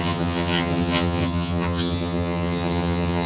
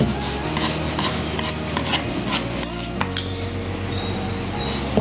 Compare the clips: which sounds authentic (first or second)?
second